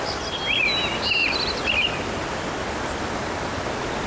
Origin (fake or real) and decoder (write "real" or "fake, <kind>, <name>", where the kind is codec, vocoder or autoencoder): real